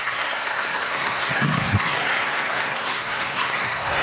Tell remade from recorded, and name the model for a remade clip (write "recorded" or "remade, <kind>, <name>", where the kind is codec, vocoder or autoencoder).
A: remade, codec, SNAC